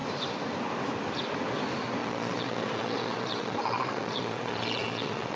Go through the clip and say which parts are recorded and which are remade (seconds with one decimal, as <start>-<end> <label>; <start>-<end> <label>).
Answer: 0.0-2.0 recorded; 2.0-5.4 remade